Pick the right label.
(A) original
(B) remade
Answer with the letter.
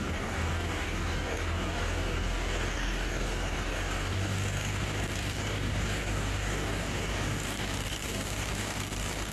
B